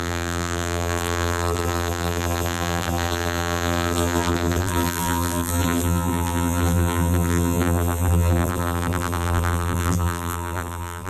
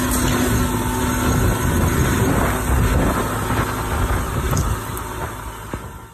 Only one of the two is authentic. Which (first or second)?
second